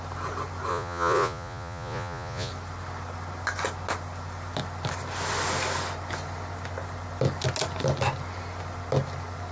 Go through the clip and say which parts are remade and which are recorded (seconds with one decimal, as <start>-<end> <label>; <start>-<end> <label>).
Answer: 0.0-0.7 recorded; 0.7-2.5 remade; 2.5-9.5 recorded